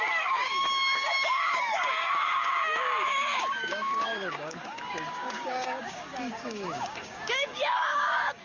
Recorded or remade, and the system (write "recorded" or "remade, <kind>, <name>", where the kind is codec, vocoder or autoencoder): remade, codec, DAC